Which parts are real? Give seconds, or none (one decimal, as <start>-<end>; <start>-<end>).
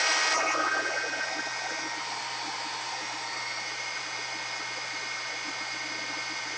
0.0-6.6